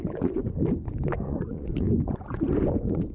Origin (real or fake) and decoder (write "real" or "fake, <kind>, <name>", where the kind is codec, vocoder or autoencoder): fake, vocoder, Vocos